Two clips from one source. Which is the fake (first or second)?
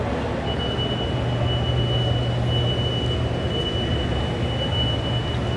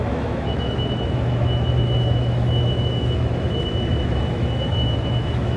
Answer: second